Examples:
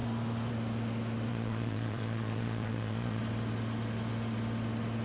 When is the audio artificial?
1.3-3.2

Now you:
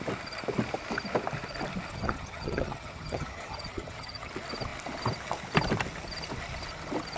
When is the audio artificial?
1.9-4.3

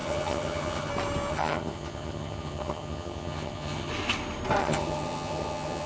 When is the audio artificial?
0.0-0.9; 1.3-3.9; 4.6-5.9

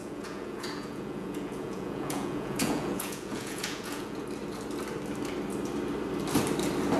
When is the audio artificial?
0.0-4.2

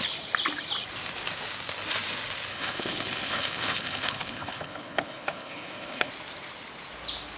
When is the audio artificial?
2.5-6.1

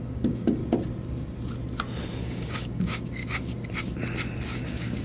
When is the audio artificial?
0.0-0.6; 2.2-3.2; 4.4-5.0

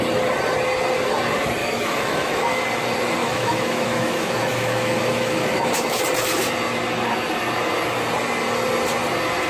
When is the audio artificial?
1.6-2.6; 3.2-6.0

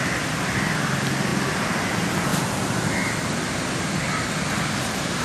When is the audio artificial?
1.3-1.9; 2.3-4.0